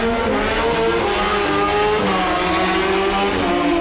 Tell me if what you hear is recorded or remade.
recorded